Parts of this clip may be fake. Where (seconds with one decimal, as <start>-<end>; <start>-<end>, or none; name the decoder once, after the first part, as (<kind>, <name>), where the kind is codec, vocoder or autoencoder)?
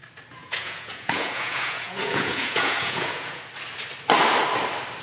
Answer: 0.4-3.4 (vocoder, Vocos)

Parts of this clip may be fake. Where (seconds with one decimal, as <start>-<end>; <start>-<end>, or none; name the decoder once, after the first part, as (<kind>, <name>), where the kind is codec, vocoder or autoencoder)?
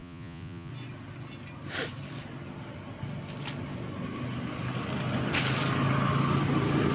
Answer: 0.0-0.7 (vocoder, Vocos)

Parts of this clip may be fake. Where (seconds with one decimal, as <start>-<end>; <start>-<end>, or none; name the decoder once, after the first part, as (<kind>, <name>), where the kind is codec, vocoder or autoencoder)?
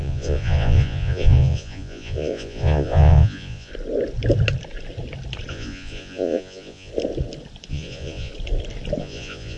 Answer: 0.0-3.7 (vocoder, Vocos); 5.5-6.9; 7.7-8.3; 9.0-9.6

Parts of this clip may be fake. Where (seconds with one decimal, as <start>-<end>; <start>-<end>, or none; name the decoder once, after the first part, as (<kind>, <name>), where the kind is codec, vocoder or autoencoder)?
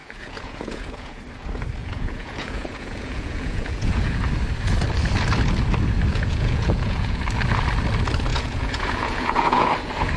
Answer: 0.0-1.2 (vocoder, Vocos); 1.8-4.2; 6.1-7.2; 8.3-9.7